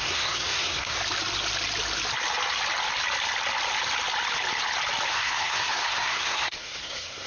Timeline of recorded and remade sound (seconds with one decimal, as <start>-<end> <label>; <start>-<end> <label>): 0.0-1.0 remade; 1.0-5.1 recorded; 5.1-7.3 remade